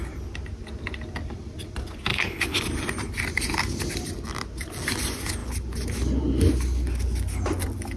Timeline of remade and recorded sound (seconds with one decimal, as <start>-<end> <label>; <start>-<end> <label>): 0.0-2.1 recorded; 2.1-2.6 remade; 2.6-8.0 recorded